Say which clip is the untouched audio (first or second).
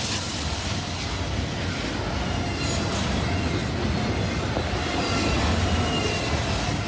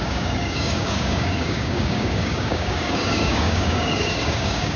first